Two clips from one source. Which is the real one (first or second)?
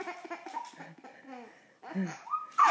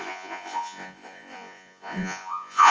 first